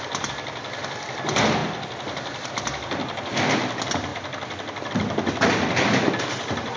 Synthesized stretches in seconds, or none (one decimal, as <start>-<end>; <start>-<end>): none